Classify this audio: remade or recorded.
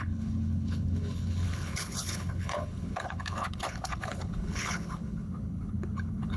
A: remade